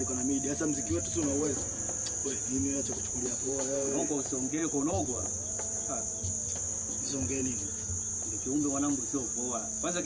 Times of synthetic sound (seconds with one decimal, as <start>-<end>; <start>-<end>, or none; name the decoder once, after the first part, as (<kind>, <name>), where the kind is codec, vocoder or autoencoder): 1.3-1.8 (vocoder, BigVGAN v2); 2.2-6.2; 7.4-7.9